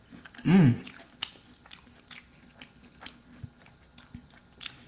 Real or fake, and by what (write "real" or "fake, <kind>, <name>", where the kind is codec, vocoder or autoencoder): real